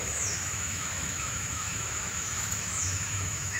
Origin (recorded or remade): remade